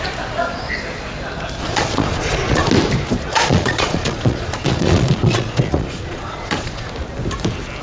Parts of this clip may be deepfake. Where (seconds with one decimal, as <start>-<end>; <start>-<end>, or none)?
1.6-2.7; 3.3-6.9

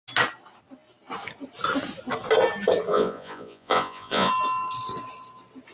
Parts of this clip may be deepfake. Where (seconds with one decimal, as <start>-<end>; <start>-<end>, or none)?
2.9-4.3

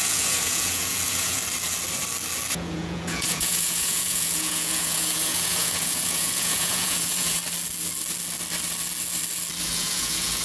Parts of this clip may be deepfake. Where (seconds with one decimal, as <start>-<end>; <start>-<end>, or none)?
0.0-1.4; 2.5-7.4; 9.6-10.4

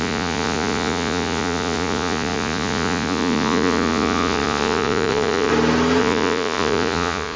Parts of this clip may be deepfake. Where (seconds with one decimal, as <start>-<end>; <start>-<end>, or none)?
0.0-5.5; 6.0-7.4

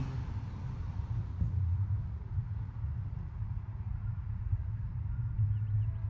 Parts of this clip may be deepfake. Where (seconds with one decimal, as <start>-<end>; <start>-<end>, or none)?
1.2-4.9

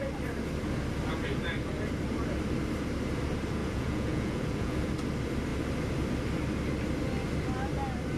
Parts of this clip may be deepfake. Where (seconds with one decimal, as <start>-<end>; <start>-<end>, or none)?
3.6-4.9

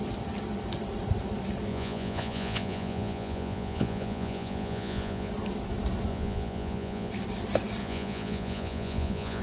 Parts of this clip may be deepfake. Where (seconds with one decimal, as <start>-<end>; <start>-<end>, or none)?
1.7-5.3; 6.1-7.1; 7.8-9.4